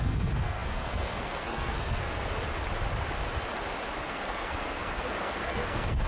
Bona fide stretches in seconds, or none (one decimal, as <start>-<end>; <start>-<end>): 2.3-4.0